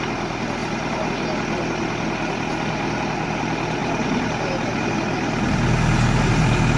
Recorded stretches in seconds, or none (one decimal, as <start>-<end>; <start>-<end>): 0.0-6.8